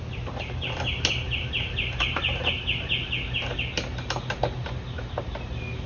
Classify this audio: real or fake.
real